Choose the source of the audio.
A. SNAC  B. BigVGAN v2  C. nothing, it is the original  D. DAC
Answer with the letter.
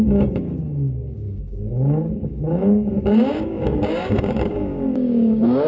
D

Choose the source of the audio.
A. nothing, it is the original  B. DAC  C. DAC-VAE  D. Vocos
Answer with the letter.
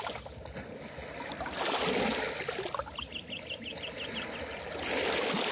A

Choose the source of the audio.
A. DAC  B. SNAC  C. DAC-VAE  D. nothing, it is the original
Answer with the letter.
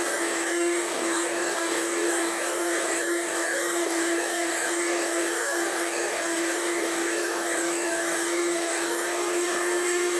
A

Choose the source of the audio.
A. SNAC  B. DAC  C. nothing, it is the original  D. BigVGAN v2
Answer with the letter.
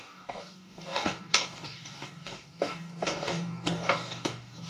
B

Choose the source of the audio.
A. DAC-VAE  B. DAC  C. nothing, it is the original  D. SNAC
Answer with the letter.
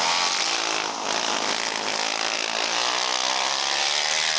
C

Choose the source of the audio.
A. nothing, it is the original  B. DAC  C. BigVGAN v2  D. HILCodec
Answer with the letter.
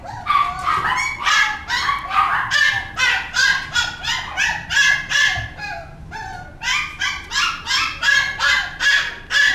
A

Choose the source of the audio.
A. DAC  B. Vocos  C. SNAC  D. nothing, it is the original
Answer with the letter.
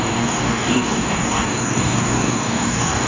A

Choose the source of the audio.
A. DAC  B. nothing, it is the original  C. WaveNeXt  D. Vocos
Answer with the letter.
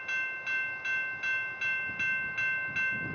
B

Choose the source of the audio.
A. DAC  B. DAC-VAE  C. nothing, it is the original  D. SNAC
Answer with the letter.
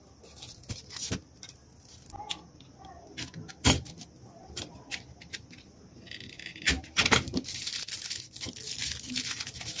C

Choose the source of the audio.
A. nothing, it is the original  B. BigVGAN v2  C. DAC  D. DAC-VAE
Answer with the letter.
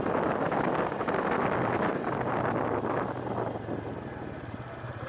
A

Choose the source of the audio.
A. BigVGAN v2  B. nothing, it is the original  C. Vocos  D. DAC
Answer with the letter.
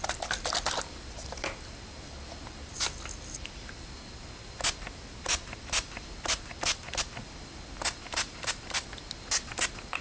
B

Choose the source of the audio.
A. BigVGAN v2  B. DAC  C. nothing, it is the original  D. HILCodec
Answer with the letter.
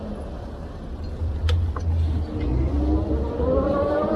C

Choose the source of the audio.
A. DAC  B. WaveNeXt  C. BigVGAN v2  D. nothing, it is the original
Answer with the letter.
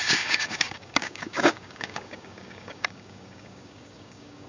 A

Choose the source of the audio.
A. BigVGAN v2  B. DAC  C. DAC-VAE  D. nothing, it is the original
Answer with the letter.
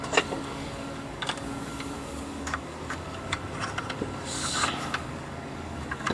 B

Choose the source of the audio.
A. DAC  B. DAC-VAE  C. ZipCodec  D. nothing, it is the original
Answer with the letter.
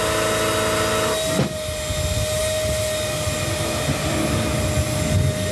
D